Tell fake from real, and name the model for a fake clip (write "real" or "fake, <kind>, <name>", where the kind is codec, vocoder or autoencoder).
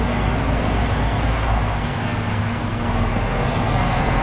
fake, codec, SNAC